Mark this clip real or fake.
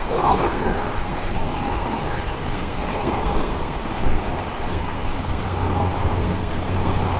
fake